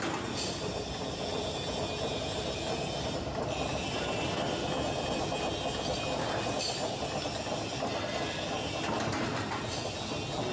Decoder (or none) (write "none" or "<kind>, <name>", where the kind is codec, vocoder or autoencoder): none